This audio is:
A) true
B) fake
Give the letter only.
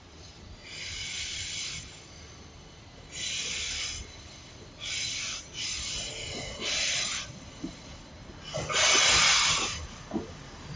A